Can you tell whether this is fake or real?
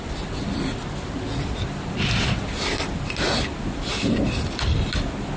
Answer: real